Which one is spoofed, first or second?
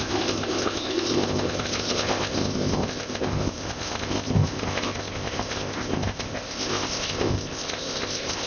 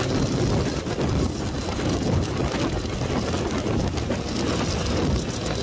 first